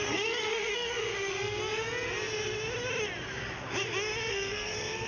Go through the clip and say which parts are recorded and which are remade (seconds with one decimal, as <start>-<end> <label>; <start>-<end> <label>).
0.0-1.6 remade; 1.6-4.3 recorded; 4.3-5.1 remade